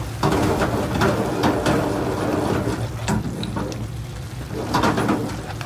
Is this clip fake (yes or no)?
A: no